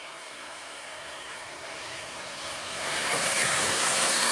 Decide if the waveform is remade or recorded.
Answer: remade